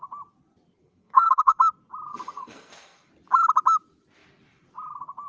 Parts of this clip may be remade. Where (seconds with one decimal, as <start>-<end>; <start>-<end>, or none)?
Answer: 0.8-1.6; 2.1-3.1